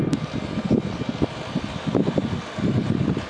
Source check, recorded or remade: recorded